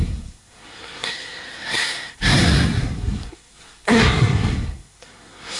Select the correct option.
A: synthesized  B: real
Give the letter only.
A